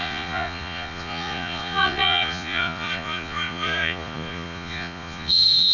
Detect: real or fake fake